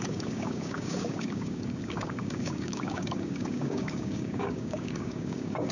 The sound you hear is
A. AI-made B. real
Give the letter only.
A